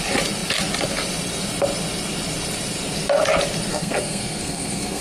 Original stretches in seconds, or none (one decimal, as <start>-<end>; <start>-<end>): 0.0-3.7